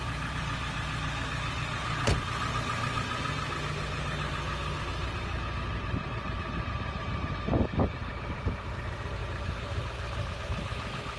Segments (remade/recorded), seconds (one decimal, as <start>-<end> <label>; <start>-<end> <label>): 0.0-11.2 recorded